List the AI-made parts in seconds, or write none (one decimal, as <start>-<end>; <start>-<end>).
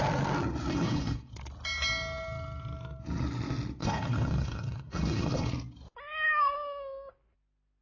0.7-1.3; 3.8-5.5